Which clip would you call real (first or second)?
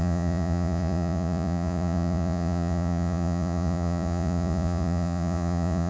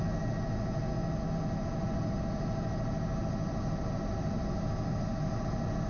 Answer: second